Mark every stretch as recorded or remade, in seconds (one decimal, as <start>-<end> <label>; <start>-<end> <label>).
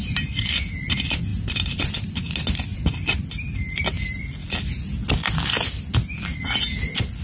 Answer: 0.0-7.2 recorded